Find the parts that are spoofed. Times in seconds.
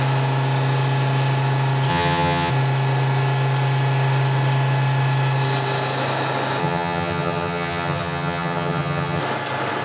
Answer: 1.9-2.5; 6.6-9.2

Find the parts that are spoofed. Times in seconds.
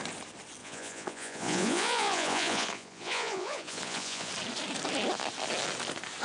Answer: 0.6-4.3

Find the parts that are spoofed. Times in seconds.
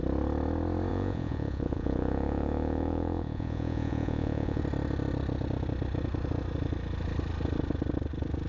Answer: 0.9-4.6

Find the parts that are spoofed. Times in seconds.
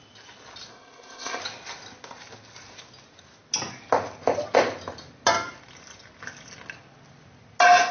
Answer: 0.7-1.4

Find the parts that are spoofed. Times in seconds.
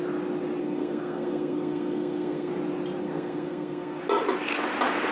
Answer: 0.6-2.5; 3.0-4.0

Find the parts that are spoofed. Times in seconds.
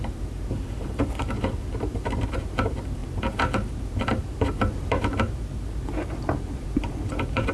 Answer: 0.0-7.5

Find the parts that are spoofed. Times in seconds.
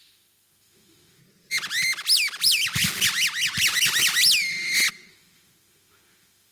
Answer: 0.0-1.2; 5.1-6.5